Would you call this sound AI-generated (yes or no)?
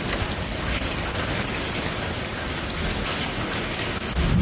no